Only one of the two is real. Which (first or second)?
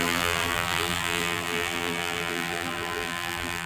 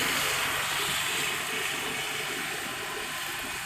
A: second